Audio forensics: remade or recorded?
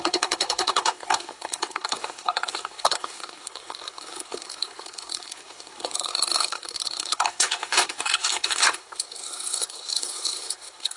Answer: remade